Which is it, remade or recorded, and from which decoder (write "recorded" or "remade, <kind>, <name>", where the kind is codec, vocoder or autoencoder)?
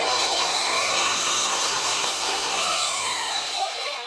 remade, codec, SNAC